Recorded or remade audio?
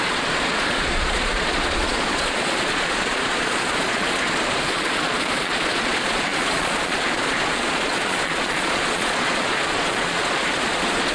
remade